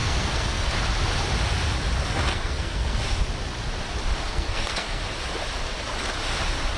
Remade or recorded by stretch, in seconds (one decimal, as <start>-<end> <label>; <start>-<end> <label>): 0.0-0.7 remade; 0.7-2.3 recorded; 2.3-3.0 remade; 3.0-4.1 recorded; 4.1-5.0 remade; 5.0-6.8 recorded